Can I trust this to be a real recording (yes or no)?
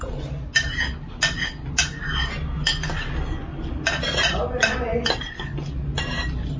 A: yes